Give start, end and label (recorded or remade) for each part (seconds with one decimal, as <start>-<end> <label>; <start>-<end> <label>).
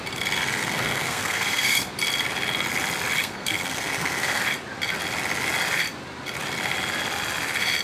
0.0-0.6 recorded; 0.6-1.9 remade; 1.9-3.2 recorded; 3.2-4.4 remade; 4.4-7.8 recorded